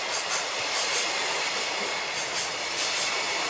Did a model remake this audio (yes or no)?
no